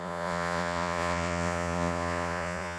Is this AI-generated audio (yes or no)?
yes